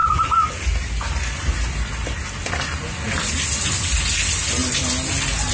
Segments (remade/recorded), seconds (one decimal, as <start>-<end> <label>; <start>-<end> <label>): 0.0-5.5 recorded